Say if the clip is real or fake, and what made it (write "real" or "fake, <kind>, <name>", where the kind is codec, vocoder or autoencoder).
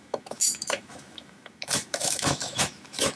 fake, autoencoder, DAC-VAE